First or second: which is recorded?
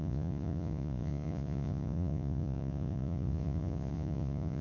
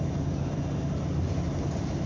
second